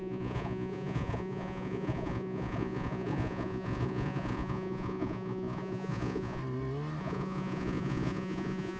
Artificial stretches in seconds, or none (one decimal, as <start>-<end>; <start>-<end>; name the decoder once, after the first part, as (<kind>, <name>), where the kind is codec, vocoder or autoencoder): 0.0-6.4 (vocoder, Vocos); 7.0-8.8